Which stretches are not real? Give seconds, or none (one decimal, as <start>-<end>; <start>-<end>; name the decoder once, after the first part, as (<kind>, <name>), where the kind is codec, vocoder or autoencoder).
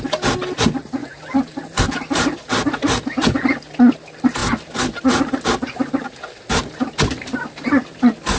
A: 1.0-1.8 (vocoder, BigVGAN v2)